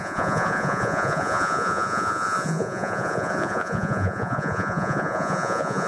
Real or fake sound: fake